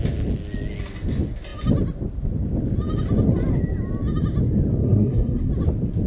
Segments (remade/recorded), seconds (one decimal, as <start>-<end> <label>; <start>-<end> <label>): 0.0-4.8 recorded; 4.8-5.5 remade; 5.5-6.1 recorded